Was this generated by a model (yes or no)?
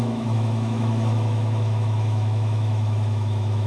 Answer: yes